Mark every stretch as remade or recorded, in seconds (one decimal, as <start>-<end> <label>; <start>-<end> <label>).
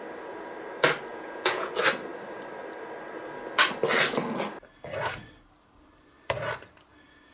0.0-1.1 recorded; 1.1-1.7 remade; 1.7-7.3 recorded